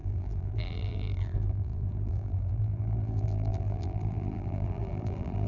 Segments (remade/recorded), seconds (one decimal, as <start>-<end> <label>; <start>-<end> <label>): 0.0-5.5 remade